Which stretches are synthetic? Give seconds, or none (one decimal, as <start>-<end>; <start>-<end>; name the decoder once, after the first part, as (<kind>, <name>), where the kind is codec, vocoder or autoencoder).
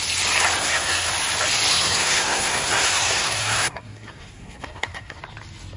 0.6-1.1 (codec, SNAC); 1.7-5.2